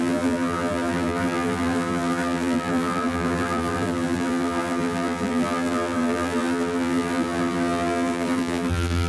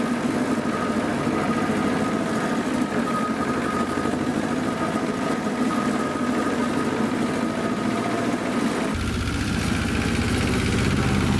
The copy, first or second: first